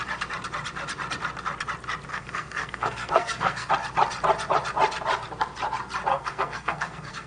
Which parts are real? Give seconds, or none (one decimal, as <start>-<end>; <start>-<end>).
0.0-2.1; 3.7-6.1